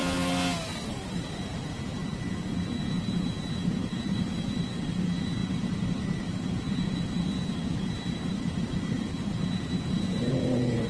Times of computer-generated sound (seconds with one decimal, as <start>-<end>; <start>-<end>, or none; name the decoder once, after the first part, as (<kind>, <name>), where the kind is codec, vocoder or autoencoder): 0.9-2.1 (vocoder, BigVGAN v2); 3.7-10.9